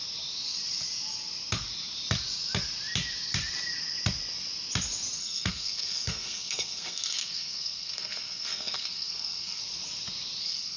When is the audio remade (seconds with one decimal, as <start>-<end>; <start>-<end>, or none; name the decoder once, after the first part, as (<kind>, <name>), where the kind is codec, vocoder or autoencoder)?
5.2-9.6 (codec, SNAC); 10.4-10.8